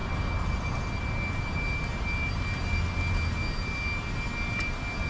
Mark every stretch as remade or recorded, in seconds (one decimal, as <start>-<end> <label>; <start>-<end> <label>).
0.0-5.1 recorded

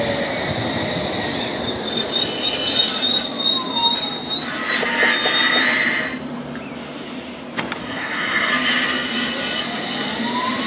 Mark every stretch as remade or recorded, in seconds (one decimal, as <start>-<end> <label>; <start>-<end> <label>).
0.0-7.8 recorded; 7.8-8.5 remade; 8.5-10.7 recorded

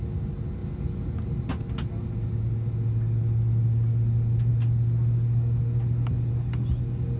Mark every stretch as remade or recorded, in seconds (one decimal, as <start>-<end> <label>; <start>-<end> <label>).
0.0-7.2 recorded